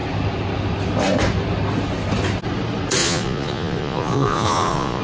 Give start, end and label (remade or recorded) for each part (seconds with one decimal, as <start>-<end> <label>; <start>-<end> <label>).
0.0-3.0 recorded; 3.0-5.0 remade

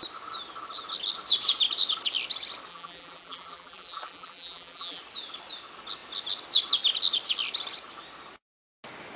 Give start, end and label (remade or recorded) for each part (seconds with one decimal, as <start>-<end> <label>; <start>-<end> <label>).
0.0-2.7 recorded; 2.7-5.0 remade; 5.0-9.2 recorded

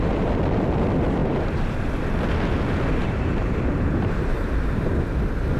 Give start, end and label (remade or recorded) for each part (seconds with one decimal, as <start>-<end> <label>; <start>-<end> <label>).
0.0-1.2 recorded; 1.2-2.0 remade; 2.0-3.0 recorded; 3.0-4.9 remade; 4.9-5.6 recorded

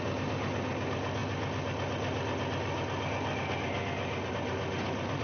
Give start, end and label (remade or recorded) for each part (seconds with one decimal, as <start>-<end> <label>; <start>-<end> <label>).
0.0-5.2 recorded